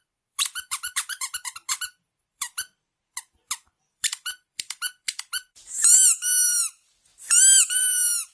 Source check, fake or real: fake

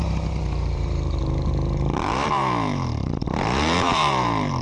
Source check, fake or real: fake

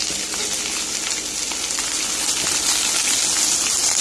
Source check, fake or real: real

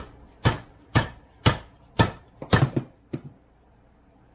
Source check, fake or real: fake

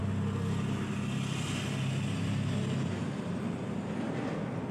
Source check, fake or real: real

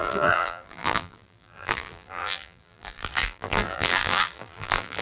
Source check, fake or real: fake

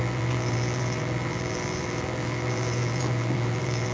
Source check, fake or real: fake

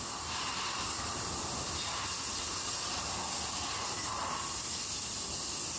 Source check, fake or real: real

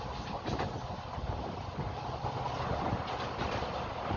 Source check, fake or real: real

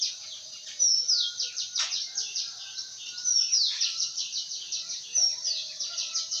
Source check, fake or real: fake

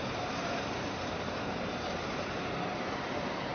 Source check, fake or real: fake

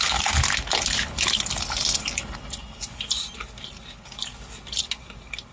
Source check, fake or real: real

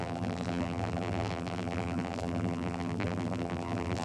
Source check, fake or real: fake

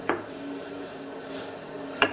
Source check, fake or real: fake